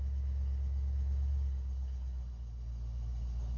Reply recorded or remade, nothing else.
recorded